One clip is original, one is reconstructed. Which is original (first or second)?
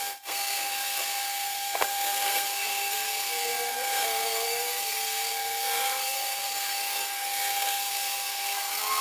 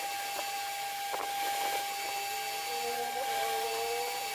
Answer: second